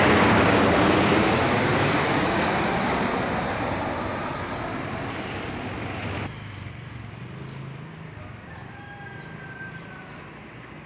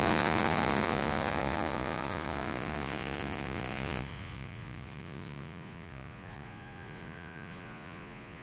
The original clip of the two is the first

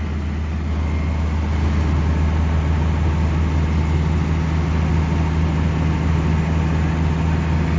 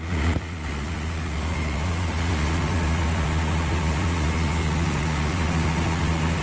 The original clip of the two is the first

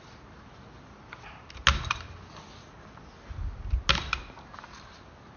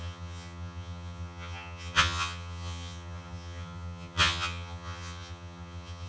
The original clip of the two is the first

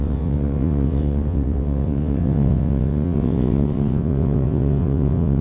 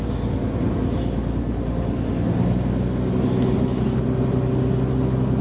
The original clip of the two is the second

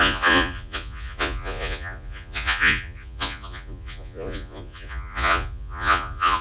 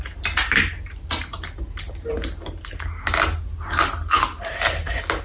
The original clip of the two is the second